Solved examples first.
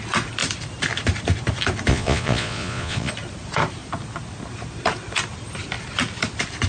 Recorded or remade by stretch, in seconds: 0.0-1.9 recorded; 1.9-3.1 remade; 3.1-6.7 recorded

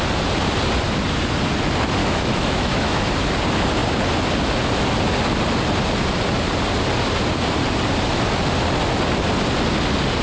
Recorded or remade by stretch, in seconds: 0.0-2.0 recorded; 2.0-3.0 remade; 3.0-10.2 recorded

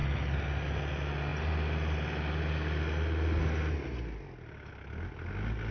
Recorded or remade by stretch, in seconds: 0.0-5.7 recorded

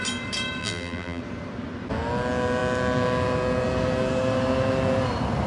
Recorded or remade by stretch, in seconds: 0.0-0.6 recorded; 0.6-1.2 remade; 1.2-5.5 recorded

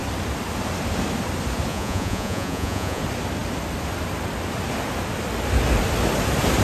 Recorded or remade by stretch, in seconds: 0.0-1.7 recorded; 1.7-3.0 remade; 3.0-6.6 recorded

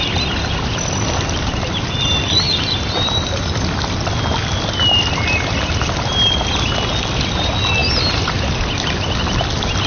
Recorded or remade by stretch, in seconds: 0.0-9.9 recorded

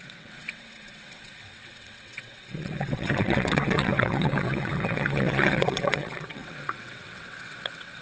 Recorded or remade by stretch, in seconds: 0.0-8.0 remade